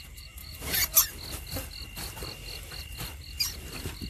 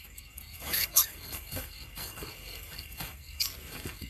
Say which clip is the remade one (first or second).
second